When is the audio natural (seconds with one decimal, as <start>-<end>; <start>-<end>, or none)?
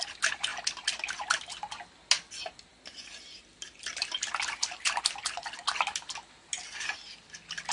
0.0-2.7; 5.0-7.7